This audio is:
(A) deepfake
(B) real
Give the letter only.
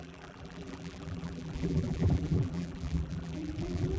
A